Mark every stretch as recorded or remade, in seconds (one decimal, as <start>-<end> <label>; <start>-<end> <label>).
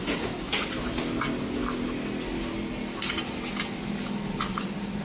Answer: 0.0-5.0 recorded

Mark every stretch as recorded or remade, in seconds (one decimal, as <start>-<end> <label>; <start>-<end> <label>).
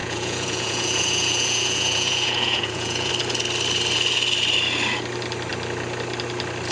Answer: 0.0-3.1 remade; 3.1-6.7 recorded